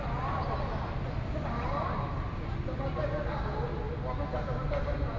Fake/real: real